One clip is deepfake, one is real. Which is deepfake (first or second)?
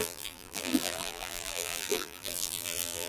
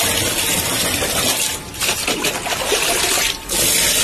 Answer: first